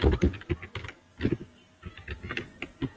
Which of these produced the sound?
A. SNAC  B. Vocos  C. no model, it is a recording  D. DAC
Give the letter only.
C